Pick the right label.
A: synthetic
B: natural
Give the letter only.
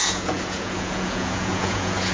A